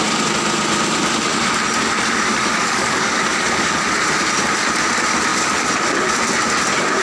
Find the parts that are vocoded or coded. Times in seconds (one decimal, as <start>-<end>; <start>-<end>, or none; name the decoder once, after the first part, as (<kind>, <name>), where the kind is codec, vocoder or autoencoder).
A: 2.5-3.8 (codec, DAC)